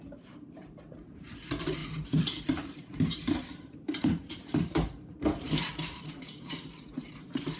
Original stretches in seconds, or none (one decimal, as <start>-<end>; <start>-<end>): none